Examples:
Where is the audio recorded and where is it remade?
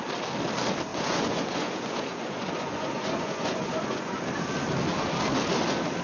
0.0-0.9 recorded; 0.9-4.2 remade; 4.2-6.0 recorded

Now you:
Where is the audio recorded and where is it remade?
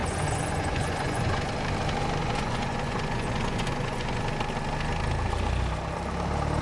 0.0-1.5 remade; 1.5-2.2 recorded; 2.2-4.2 remade; 4.2-6.6 recorded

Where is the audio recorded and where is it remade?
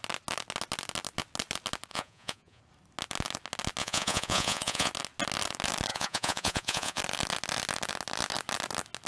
0.0-1.9 recorded; 1.9-2.6 remade; 2.6-3.8 recorded; 3.8-4.9 remade; 4.9-5.9 recorded; 5.9-7.0 remade; 7.0-9.1 recorded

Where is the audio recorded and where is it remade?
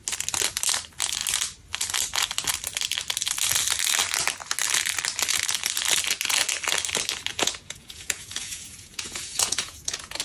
0.0-7.3 recorded; 7.3-10.2 remade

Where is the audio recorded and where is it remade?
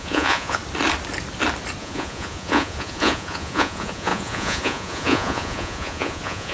0.0-0.6 remade; 0.6-1.8 recorded; 1.8-6.5 remade